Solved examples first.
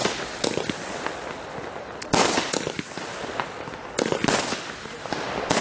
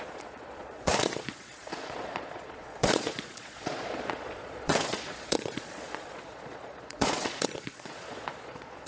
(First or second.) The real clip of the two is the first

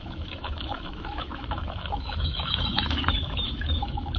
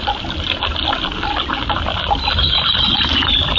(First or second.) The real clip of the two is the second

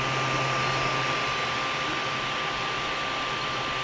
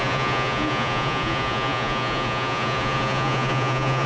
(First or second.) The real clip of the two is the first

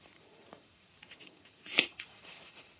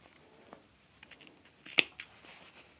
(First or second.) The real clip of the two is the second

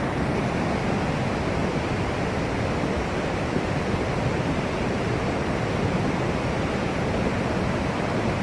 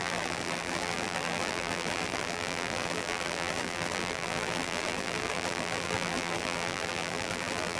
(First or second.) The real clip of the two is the first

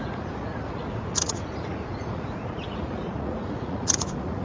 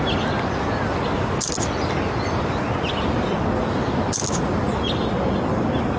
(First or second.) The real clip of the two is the second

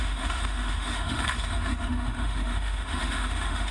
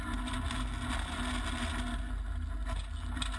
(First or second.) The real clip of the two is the second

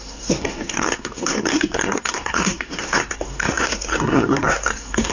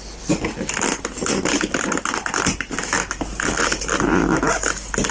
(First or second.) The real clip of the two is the second